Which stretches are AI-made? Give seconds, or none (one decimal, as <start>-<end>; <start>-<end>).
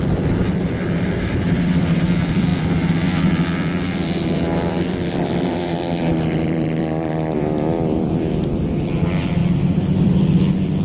0.0-9.4; 10.0-10.8